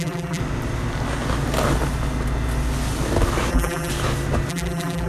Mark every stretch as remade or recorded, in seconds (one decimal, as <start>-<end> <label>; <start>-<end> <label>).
0.0-0.4 remade; 0.4-3.5 recorded; 3.5-3.9 remade; 3.9-4.5 recorded; 4.5-5.1 remade